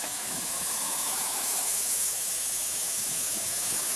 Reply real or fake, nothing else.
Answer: fake